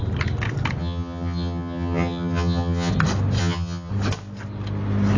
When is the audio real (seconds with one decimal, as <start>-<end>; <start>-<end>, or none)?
0.0-0.8; 2.9-3.4; 3.9-5.2

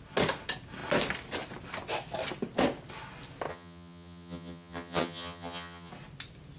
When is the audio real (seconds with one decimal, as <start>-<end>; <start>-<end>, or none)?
0.0-3.5; 5.9-6.6

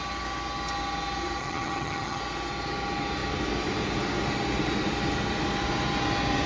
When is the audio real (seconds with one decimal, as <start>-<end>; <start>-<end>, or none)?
0.0-1.4; 2.2-6.5

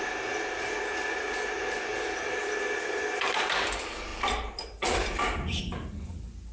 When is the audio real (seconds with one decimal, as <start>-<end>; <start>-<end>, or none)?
0.0-6.5

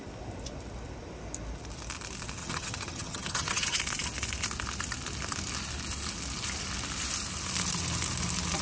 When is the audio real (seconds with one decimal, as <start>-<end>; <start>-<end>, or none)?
0.0-2.4; 3.8-8.6

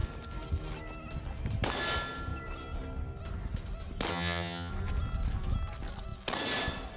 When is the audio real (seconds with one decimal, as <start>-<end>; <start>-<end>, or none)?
0.0-4.1; 4.7-7.0

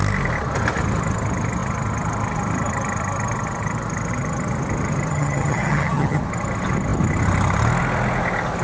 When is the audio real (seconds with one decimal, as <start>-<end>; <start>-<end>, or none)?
0.0-5.1; 6.2-8.6